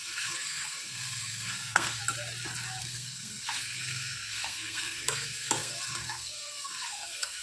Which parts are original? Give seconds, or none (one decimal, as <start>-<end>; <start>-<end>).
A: 2.0-2.8